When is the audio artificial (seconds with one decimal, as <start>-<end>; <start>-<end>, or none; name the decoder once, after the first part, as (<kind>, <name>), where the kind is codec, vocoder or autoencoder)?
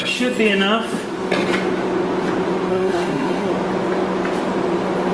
2.7-3.5 (codec, SNAC)